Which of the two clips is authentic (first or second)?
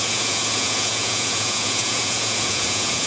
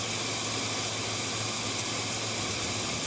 second